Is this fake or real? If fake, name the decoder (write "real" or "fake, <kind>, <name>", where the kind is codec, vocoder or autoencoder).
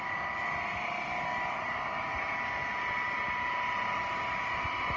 real